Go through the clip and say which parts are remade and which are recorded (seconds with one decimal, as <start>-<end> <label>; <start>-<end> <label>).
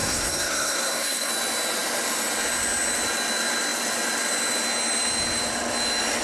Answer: 0.0-1.3 remade; 1.3-6.2 recorded